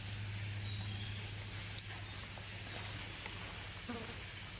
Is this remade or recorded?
recorded